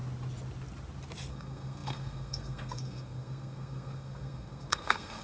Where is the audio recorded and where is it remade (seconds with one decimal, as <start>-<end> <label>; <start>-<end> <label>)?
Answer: 0.0-1.3 recorded; 1.3-5.2 remade